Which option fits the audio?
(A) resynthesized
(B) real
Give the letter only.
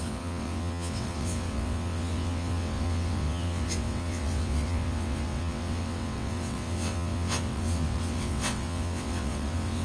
A